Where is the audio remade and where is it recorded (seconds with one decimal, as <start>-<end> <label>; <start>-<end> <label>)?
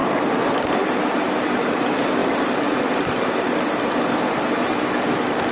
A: 0.0-5.5 recorded